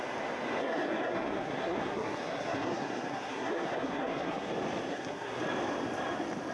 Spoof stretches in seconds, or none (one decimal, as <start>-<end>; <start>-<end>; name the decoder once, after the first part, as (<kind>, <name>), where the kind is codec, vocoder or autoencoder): 0.6-4.5 (codec, SNAC); 4.9-5.4